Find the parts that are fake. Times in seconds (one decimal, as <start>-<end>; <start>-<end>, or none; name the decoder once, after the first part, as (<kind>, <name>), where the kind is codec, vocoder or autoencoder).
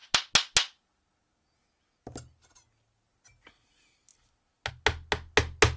none